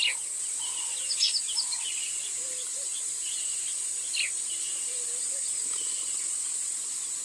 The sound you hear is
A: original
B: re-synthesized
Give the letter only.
A